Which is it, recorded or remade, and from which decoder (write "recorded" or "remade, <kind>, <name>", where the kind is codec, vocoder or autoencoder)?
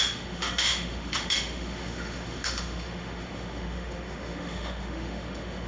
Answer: remade, autoencoder, DAC-VAE